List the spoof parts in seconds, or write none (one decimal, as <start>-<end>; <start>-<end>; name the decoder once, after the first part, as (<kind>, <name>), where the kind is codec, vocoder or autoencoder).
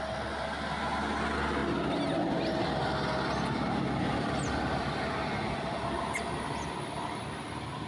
none